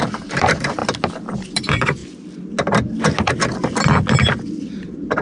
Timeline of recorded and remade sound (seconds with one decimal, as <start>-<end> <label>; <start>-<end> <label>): 0.0-0.8 remade; 0.8-1.5 recorded; 1.5-2.0 remade; 2.0-4.8 recorded; 4.8-5.2 remade

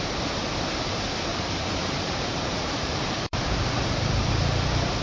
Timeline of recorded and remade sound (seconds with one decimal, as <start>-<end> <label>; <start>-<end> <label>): 0.0-1.3 recorded; 1.3-4.3 remade; 4.3-5.0 recorded

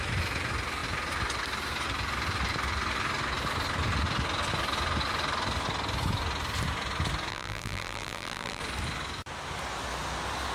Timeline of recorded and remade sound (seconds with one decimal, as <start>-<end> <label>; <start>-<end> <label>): 0.0-7.3 recorded; 7.3-8.6 remade; 8.6-10.5 recorded

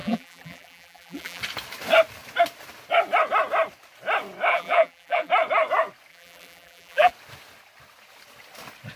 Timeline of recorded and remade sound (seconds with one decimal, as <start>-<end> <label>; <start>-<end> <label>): 0.0-1.4 remade; 1.4-4.5 recorded; 4.5-5.3 remade; 5.3-6.1 recorded; 6.1-7.1 remade; 7.1-9.0 recorded

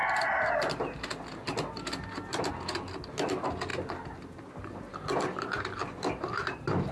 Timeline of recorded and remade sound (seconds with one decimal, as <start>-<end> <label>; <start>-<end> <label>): 0.0-5.8 recorded; 5.8-6.9 remade

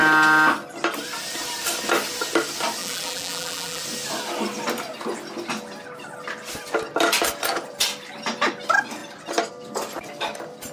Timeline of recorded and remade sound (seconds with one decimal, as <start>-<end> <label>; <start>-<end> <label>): 0.0-2.8 recorded; 2.8-3.8 remade; 3.8-10.7 recorded

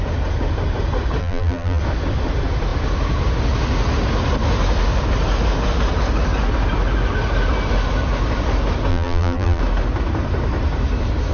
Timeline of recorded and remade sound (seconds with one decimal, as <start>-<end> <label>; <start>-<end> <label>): 0.0-1.2 recorded; 1.2-1.8 remade; 1.8-8.9 recorded; 8.9-9.6 remade; 9.6-11.3 recorded

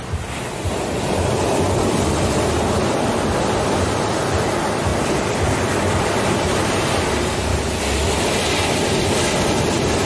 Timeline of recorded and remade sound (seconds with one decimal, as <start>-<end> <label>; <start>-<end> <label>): 0.0-10.1 recorded